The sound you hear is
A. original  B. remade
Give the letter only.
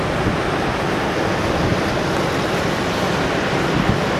A